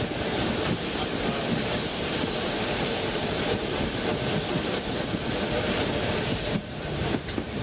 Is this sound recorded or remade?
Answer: remade